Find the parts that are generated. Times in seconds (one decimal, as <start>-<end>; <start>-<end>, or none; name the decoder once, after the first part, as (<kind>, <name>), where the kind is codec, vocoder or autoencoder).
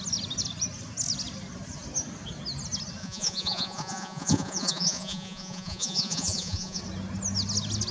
3.0-6.8 (vocoder, Vocos)